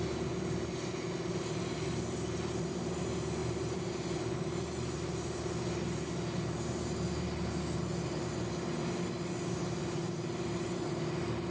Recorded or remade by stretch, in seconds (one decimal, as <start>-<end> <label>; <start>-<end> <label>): 0.0-11.5 recorded